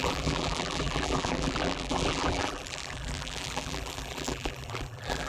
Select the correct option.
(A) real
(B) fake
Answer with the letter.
B